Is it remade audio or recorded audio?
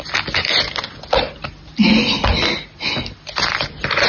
recorded